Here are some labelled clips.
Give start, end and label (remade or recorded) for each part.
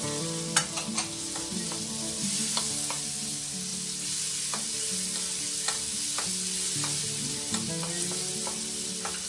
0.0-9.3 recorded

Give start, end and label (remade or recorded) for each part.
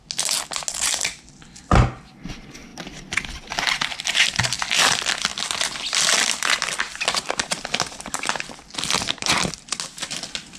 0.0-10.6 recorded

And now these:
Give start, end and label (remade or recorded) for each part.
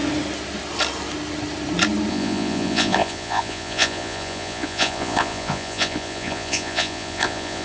0.0-2.1 recorded; 2.1-7.6 remade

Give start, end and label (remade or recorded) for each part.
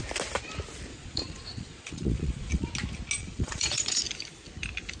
0.0-0.9 recorded; 0.9-2.7 remade; 2.7-3.2 recorded; 3.2-4.0 remade; 4.0-5.0 recorded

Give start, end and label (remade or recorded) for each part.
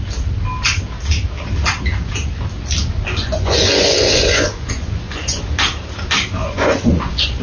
0.0-3.2 recorded; 3.2-5.4 remade; 5.4-6.4 recorded; 6.4-7.4 remade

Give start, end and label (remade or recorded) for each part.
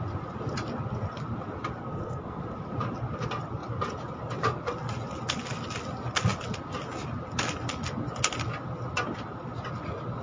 0.0-1.8 recorded; 1.8-2.4 remade; 2.4-10.2 recorded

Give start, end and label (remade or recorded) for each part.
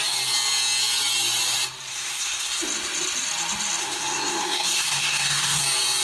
0.0-1.9 recorded; 1.9-2.6 remade; 2.6-3.8 recorded; 3.8-5.6 remade; 5.6-6.0 recorded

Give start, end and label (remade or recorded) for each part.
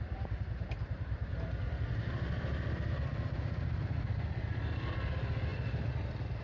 0.0-6.4 recorded